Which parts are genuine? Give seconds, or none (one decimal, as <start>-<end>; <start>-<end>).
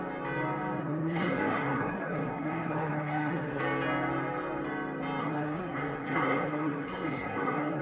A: 0.0-0.8; 3.6-5.2